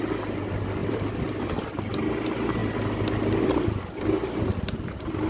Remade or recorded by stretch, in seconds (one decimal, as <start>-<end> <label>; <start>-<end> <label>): 0.0-0.8 recorded; 0.8-1.8 remade; 1.8-5.3 recorded